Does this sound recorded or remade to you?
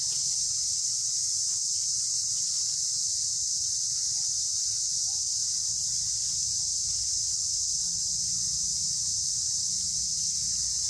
recorded